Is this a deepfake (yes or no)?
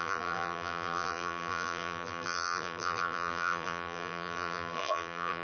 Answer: yes